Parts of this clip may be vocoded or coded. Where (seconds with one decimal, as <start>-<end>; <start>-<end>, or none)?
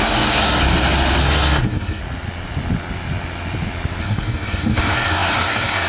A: 0.0-0.6; 1.2-2.0; 4.0-5.9